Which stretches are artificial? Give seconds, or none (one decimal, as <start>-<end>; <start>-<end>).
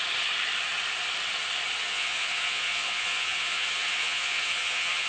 1.8-5.1